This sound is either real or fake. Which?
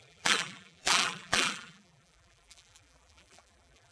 fake